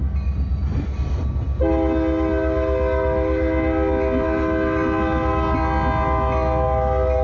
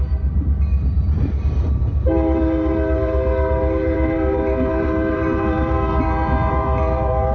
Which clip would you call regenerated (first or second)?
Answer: second